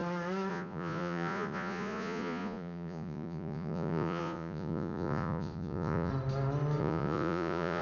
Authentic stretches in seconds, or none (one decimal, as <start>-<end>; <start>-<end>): 0.0-0.5; 6.1-6.8